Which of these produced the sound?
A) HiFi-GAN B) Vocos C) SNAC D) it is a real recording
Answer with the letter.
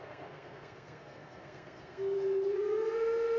C